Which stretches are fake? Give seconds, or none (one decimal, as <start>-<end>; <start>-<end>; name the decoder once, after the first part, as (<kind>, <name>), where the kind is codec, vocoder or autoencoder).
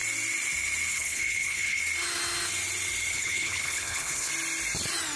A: 0.9-1.8 (codec, HILCodec); 3.1-4.3